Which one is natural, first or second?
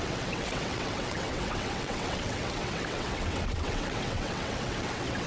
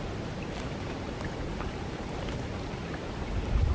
second